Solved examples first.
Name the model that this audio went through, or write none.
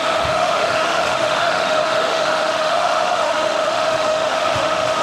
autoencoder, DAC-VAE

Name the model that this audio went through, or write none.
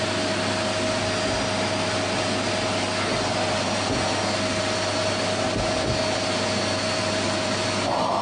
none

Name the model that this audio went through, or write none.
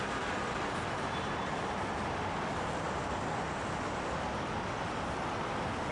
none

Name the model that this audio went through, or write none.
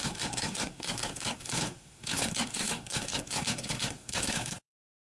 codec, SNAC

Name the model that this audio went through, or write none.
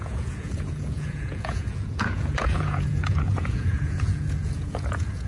vocoder, Vocos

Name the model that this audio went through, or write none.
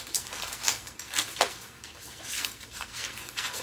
codec, SNAC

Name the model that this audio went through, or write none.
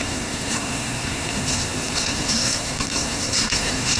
codec, SNAC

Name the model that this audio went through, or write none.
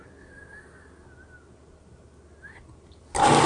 none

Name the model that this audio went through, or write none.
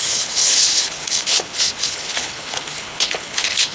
codec, HILCodec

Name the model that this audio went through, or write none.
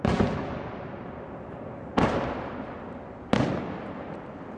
none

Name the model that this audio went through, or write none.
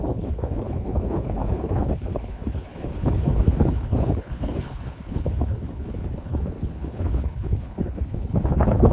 codec, HILCodec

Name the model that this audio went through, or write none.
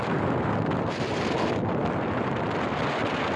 none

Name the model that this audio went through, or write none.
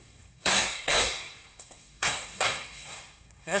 codec, SNAC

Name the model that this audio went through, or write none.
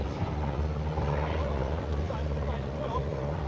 vocoder, Vocos